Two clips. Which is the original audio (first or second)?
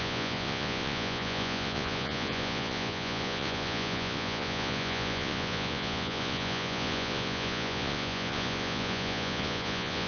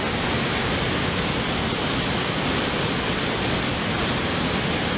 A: second